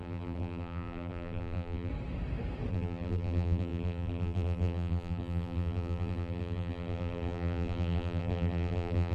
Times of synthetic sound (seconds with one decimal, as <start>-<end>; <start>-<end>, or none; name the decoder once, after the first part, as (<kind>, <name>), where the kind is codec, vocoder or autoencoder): 0.0-1.9 (vocoder, BigVGAN v2); 2.7-9.1